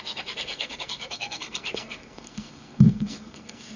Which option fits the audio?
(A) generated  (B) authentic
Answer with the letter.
A